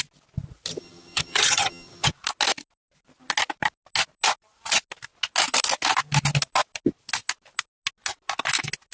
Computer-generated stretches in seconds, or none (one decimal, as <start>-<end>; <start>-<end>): 0.7-2.1